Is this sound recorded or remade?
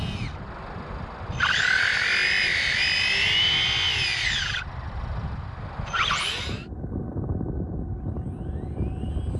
recorded